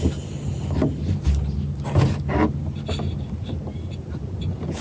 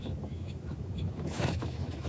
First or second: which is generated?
second